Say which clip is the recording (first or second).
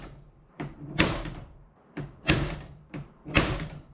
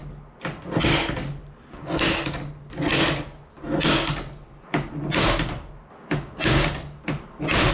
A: second